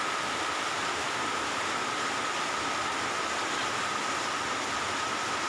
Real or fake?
real